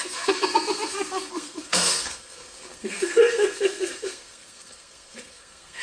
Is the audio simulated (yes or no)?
yes